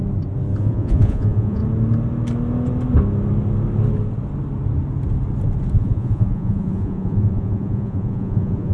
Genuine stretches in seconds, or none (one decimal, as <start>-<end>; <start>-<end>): 0.0-0.6; 1.6-5.7